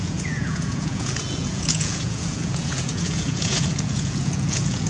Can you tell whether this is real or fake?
fake